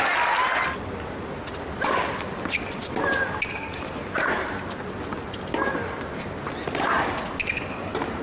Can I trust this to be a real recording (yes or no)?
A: yes